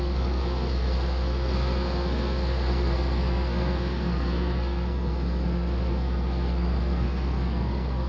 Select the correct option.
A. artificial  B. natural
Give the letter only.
A